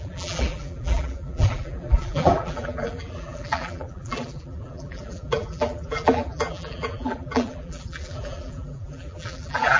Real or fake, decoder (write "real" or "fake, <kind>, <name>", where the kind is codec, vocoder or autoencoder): fake, vocoder, BigVGAN v2